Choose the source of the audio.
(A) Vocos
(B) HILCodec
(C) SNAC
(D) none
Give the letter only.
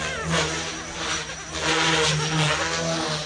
D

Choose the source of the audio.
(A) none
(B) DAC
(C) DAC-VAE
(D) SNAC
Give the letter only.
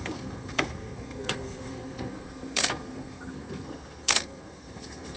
D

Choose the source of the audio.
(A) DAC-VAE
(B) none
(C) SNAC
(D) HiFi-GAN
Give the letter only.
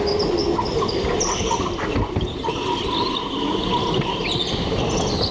B